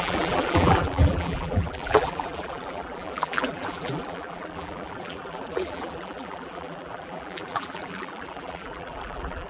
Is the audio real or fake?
fake